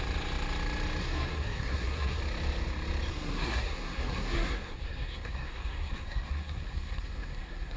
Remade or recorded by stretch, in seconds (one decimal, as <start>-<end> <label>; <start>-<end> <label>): 0.0-1.0 recorded; 1.0-2.2 remade; 2.2-3.1 recorded; 3.1-7.8 remade